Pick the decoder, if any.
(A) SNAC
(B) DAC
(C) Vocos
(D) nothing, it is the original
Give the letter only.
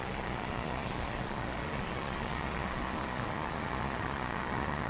C